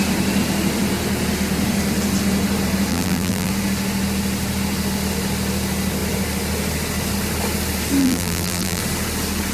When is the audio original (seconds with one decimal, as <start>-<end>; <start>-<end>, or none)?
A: 0.0-2.9; 3.5-8.0; 8.8-9.5

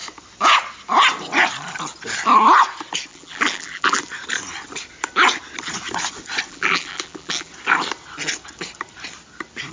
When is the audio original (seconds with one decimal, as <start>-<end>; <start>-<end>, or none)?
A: 0.0-3.1; 4.0-6.5; 7.5-9.7